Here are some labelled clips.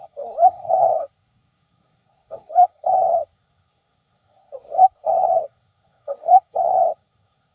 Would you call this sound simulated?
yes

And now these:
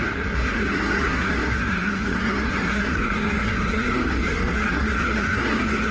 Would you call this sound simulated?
yes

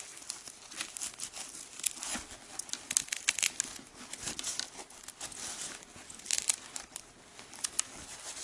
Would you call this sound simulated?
no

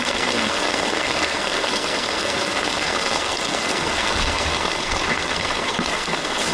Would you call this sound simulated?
yes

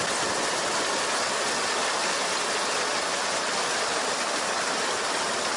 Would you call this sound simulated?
no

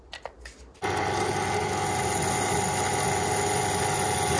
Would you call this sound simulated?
no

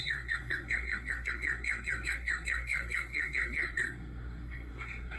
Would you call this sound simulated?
yes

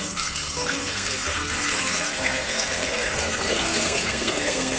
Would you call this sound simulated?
yes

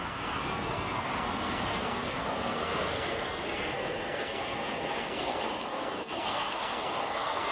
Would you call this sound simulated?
yes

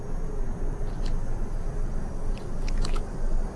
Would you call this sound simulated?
no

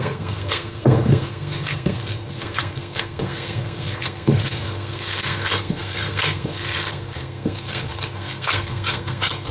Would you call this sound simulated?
yes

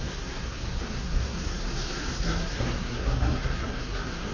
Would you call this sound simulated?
yes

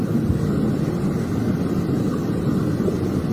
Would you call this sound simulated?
no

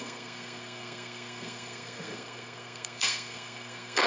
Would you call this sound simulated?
yes